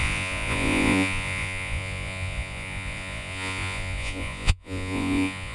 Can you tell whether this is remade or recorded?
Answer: remade